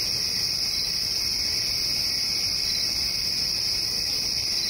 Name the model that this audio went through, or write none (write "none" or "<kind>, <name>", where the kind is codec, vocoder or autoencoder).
none